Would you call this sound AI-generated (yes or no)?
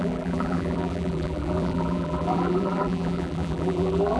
yes